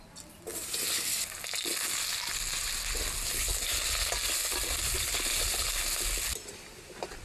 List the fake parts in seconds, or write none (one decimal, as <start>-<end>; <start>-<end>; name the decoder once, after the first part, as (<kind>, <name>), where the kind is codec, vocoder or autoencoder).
none